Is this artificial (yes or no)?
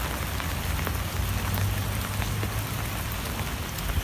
no